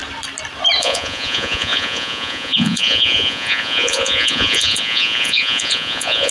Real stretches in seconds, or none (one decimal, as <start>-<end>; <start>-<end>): 0.0-0.8